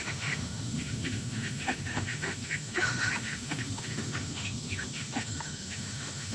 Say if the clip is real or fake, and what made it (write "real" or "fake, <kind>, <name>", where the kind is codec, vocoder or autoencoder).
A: fake, autoencoder, DAC-VAE